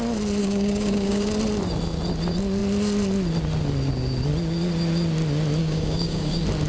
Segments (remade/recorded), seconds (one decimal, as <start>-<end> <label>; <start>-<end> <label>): 0.0-0.4 recorded; 0.4-1.3 remade; 1.3-5.6 recorded; 5.6-6.3 remade; 6.3-6.7 recorded